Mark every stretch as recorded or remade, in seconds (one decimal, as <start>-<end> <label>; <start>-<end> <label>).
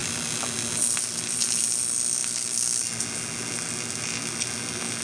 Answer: 0.0-5.0 recorded